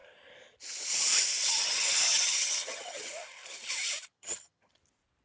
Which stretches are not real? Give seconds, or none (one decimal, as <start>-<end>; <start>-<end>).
1.4-3.1; 4.1-4.7

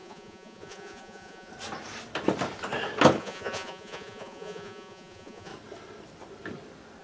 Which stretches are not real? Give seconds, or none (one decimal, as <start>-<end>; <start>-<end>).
0.0-1.5; 3.2-5.5